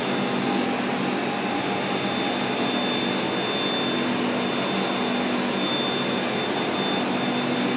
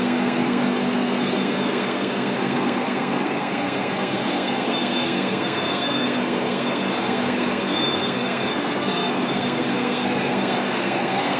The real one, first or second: first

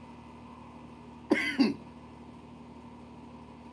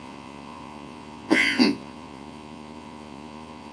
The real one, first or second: first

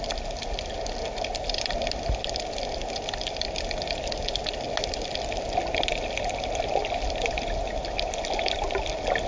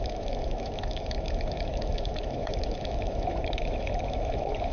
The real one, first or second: first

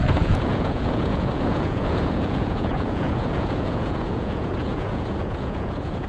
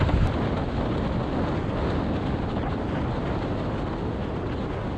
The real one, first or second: second